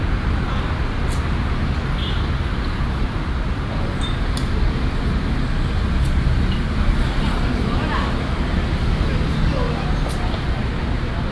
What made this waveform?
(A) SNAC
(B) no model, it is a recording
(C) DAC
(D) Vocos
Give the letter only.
B